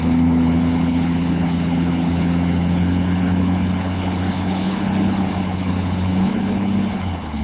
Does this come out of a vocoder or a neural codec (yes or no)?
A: yes